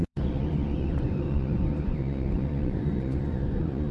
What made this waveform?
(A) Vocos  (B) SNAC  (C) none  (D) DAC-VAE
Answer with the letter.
A